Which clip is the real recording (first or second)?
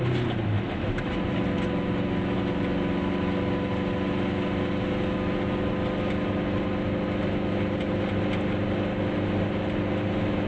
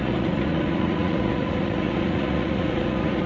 first